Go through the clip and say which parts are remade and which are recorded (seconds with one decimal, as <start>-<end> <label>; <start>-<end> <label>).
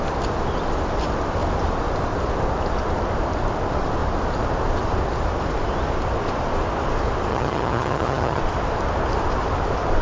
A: 0.0-7.3 recorded; 7.3-8.4 remade; 8.4-10.0 recorded